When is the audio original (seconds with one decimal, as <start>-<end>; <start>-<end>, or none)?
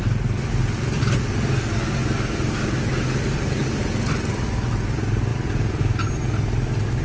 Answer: 0.0-7.0